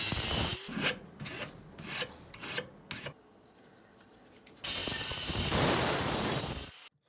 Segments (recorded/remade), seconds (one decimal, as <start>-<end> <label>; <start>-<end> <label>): 0.0-7.1 recorded